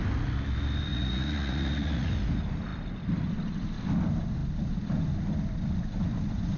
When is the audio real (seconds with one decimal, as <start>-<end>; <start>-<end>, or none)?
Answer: 0.0-0.9; 2.1-6.6